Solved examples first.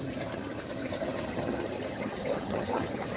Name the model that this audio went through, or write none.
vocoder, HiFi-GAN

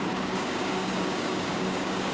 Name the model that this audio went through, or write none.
codec, DAC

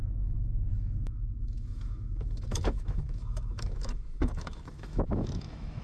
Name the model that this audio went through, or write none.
autoencoder, DAC-VAE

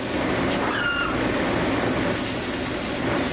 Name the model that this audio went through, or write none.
none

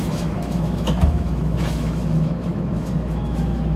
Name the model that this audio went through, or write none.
autoencoder, DAC-VAE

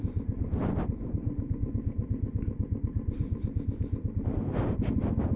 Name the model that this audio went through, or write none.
none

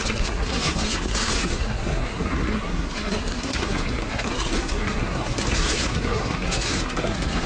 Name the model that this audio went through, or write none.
codec, SNAC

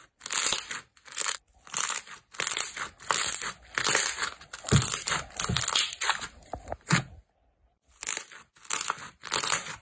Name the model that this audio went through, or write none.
none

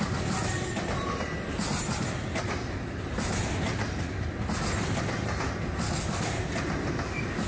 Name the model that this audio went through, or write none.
none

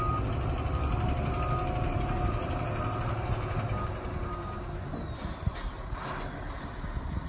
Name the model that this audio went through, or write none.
none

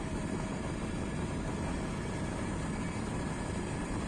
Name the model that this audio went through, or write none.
none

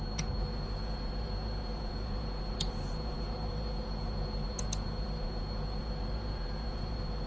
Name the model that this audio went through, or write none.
vocoder, Vocos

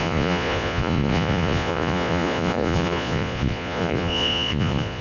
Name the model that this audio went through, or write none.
vocoder, Vocos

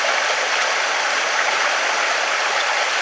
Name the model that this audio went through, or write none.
none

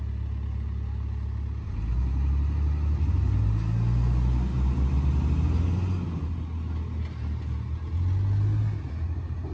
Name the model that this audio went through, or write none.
none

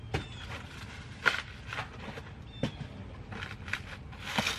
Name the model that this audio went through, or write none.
none